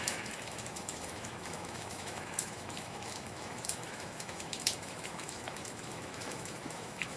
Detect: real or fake fake